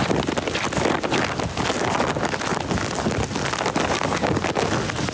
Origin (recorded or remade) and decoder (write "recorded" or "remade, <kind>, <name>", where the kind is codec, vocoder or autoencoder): recorded